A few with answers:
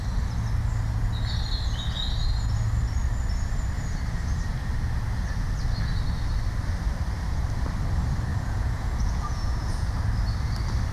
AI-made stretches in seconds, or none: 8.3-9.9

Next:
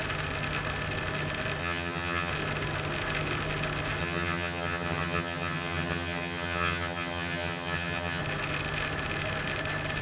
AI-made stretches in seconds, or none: 1.6-2.3; 4.0-8.2

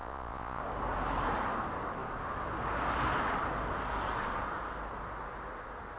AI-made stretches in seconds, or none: 0.0-0.6

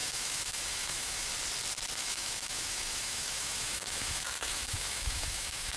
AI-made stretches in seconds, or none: 0.0-1.3; 2.0-5.8